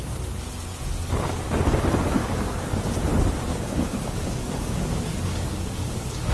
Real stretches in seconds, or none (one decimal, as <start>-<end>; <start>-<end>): 0.0-2.2; 2.8-3.5